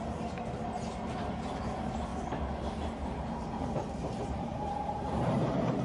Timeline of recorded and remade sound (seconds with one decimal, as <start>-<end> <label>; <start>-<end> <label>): 0.0-2.1 recorded; 2.1-5.8 remade